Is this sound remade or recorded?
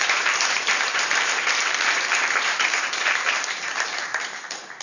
remade